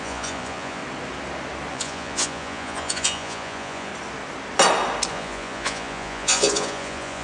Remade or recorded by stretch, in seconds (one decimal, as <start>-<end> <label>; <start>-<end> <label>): 0.0-0.8 remade; 0.8-1.7 recorded; 1.7-3.9 remade; 3.9-5.1 recorded; 5.1-7.2 remade